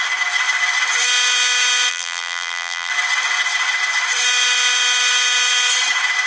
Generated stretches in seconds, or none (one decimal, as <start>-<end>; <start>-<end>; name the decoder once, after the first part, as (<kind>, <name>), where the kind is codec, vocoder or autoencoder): 1.9-2.9 (vocoder, BigVGAN v2)